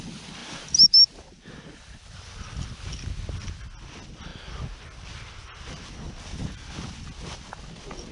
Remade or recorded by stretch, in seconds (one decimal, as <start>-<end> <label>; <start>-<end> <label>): 0.0-8.1 recorded